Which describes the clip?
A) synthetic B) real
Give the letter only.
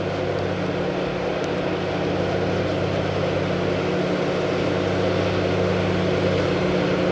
B